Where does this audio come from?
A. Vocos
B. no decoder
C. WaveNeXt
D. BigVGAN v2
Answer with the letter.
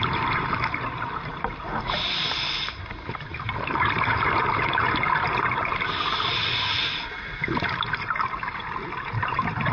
D